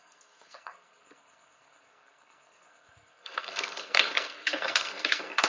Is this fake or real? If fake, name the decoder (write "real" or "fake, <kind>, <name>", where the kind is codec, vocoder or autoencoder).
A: fake, codec, SNAC